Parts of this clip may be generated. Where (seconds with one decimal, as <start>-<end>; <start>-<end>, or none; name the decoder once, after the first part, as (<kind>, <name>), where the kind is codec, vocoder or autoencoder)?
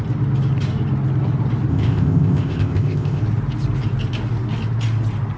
1.7-3.2 (codec, ZipCodec)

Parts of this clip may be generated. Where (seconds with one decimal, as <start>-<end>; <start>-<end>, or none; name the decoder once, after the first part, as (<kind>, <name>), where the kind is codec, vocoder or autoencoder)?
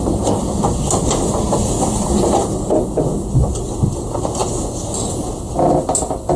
none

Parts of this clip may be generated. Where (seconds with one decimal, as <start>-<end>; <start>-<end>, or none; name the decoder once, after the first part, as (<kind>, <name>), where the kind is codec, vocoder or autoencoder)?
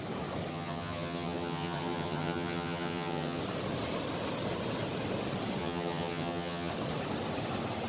0.5-3.4 (vocoder, HiFi-GAN); 5.6-6.7